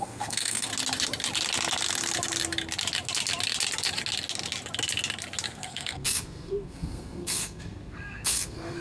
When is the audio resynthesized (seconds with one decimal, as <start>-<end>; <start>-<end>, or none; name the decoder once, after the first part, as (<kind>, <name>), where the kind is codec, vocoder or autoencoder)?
0.0-0.7 (codec, SNAC); 5.5-8.8